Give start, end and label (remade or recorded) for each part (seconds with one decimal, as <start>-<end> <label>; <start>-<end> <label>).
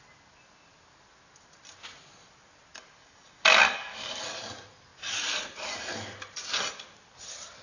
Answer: 0.0-3.0 recorded; 3.0-4.2 remade; 4.2-7.6 recorded